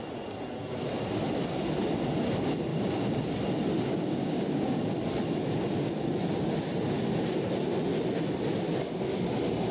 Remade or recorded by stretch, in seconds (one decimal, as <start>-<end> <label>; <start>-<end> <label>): 0.0-2.7 recorded; 2.7-3.3 remade; 3.3-3.9 recorded; 3.9-4.8 remade; 4.8-9.7 recorded